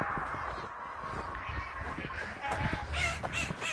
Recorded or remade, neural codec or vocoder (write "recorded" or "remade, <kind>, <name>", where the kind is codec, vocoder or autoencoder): recorded